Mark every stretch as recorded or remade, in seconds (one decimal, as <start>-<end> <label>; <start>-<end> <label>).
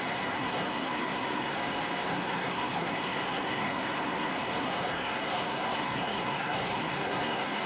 0.0-1.6 remade; 1.6-2.1 recorded; 2.1-7.7 remade